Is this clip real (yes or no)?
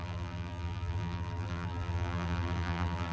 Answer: no